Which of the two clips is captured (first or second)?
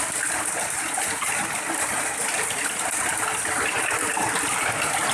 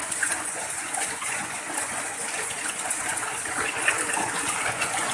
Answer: first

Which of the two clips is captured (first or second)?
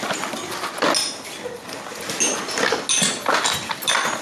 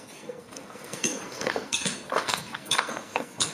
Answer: first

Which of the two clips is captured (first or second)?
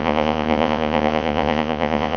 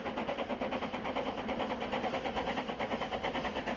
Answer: second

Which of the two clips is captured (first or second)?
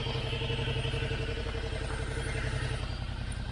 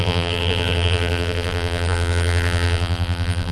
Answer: first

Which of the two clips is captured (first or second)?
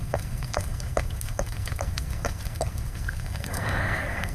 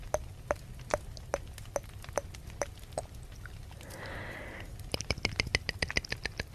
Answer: second